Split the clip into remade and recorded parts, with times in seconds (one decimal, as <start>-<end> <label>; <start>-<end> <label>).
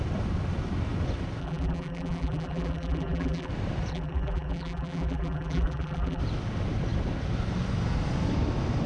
0.0-1.4 recorded; 1.4-3.5 remade; 3.5-3.9 recorded; 3.9-6.2 remade; 6.2-8.9 recorded